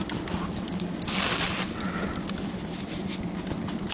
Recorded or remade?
recorded